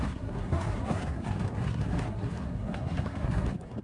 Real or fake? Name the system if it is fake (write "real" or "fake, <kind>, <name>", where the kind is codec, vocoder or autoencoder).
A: fake, codec, SNAC